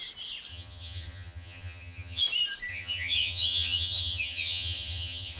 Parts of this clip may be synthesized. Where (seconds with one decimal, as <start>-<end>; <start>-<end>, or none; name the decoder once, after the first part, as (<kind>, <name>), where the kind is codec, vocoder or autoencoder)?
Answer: 0.5-2.2 (vocoder, HiFi-GAN); 2.7-5.4